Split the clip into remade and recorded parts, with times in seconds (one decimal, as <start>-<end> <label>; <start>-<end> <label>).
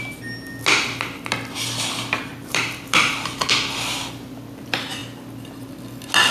0.0-2.3 recorded; 2.3-3.5 remade; 3.5-6.3 recorded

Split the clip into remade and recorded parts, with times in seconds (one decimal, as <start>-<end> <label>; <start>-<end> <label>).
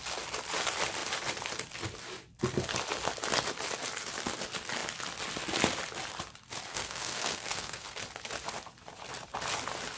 0.0-6.7 recorded; 6.7-8.0 remade; 8.0-10.0 recorded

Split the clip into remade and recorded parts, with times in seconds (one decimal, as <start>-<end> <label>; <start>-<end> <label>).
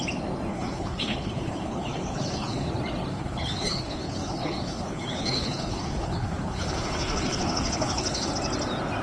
0.0-0.5 recorded; 0.5-2.7 remade; 2.7-3.1 recorded; 3.1-8.3 remade; 8.3-9.0 recorded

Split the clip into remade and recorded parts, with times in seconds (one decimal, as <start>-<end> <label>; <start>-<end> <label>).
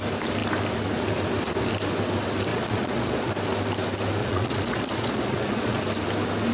0.0-2.5 recorded; 2.5-3.3 remade; 3.3-4.2 recorded; 4.2-5.8 remade; 5.8-6.5 recorded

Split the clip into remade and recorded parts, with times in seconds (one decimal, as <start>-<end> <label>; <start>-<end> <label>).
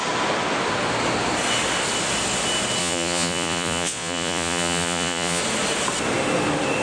0.0-2.8 recorded; 2.8-5.4 remade; 5.4-6.8 recorded